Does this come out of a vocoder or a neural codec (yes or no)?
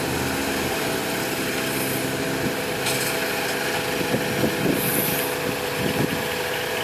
no